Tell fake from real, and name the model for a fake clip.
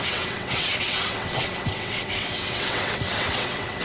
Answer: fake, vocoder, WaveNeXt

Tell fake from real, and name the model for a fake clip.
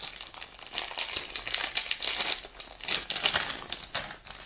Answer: real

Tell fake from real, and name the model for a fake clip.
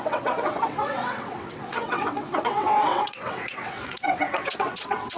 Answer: fake, vocoder, WaveNeXt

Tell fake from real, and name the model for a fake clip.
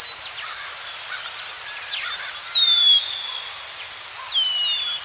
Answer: real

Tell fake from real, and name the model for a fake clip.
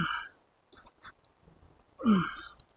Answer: real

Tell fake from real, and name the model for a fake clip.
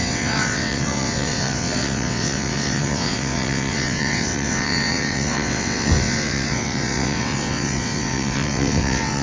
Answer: fake, vocoder, WaveNeXt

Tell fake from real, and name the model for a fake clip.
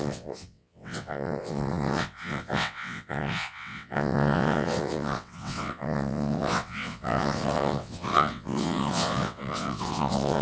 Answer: fake, vocoder, WaveNeXt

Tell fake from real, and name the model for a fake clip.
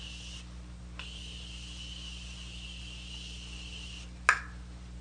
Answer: real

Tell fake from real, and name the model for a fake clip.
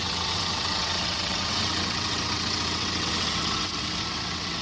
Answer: fake, vocoder, WaveNeXt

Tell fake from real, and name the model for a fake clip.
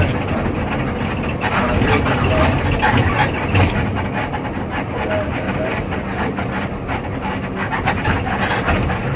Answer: real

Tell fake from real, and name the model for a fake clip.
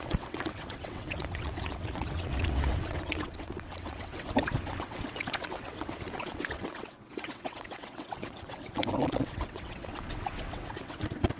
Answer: fake, vocoder, WaveNeXt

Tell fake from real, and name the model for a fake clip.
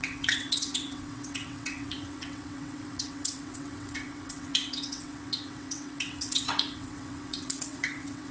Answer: fake, vocoder, WaveNeXt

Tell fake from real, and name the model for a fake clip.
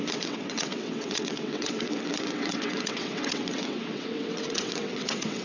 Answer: fake, vocoder, WaveNeXt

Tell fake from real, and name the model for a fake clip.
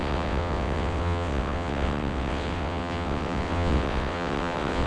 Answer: fake, vocoder, WaveNeXt